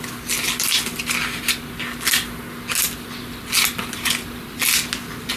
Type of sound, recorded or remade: recorded